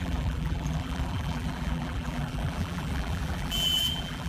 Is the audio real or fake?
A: fake